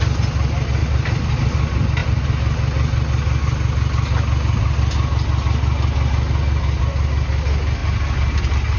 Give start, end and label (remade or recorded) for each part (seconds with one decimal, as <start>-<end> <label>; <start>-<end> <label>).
0.0-0.8 recorded; 0.8-1.4 remade; 1.4-8.8 recorded